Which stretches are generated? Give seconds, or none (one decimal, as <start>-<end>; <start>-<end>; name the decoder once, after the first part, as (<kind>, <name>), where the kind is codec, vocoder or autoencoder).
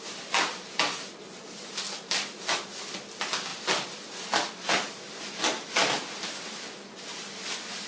none